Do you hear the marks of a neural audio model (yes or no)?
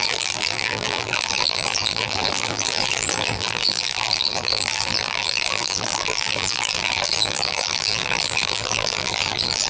yes